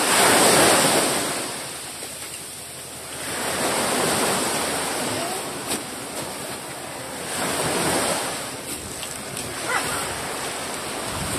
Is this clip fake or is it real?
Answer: real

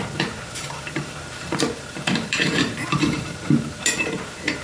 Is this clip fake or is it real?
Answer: fake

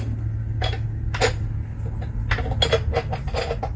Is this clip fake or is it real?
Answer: real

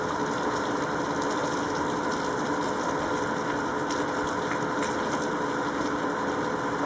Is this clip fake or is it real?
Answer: real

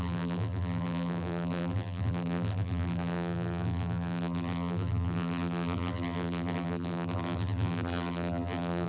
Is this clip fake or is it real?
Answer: fake